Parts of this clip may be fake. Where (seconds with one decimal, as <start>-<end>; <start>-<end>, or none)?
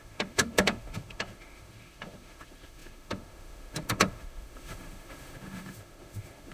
0.0-6.5